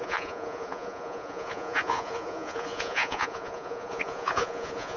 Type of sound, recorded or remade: remade